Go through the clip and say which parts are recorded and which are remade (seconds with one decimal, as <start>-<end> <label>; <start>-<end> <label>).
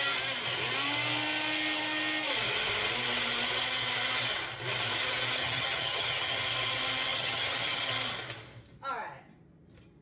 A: 0.0-5.4 recorded; 5.4-6.4 remade; 6.4-7.1 recorded; 7.1-7.9 remade; 7.9-10.0 recorded